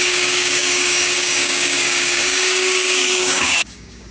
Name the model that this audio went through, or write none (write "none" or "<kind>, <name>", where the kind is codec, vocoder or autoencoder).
codec, DAC